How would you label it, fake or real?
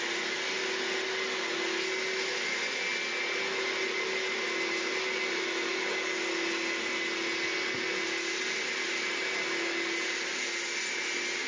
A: real